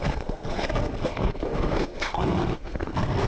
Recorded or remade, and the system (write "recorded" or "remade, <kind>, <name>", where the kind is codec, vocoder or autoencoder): remade, codec, SNAC